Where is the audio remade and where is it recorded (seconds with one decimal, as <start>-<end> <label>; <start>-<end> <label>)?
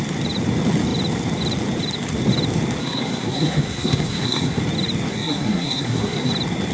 0.0-2.8 recorded; 2.8-4.6 remade; 4.6-5.1 recorded; 5.1-6.3 remade; 6.3-6.7 recorded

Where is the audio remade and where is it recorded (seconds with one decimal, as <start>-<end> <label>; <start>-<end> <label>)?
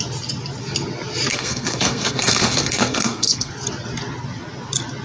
0.0-1.3 recorded; 1.3-3.5 remade; 3.5-5.0 recorded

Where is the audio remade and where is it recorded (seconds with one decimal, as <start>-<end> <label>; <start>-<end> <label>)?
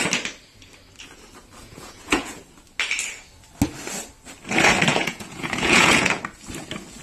0.0-1.6 recorded; 1.6-2.4 remade; 2.4-4.9 recorded; 4.9-6.2 remade; 6.2-7.0 recorded